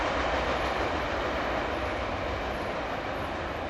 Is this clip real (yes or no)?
yes